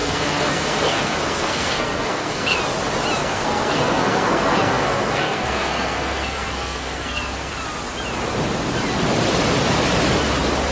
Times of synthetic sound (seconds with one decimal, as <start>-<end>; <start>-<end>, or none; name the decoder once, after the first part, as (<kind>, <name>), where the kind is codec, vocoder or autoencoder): 0.0-2.6 (codec, SNAC); 3.2-7.5